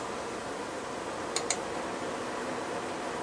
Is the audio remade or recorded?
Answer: recorded